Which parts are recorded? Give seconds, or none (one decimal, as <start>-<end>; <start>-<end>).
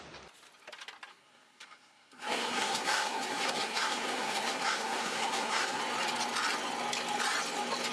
0.0-1.1; 5.8-7.9